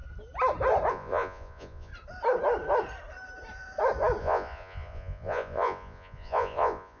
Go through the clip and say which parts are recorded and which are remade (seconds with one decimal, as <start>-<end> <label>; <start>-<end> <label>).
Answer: 0.0-0.9 recorded; 0.9-1.9 remade; 1.9-4.2 recorded; 4.2-7.0 remade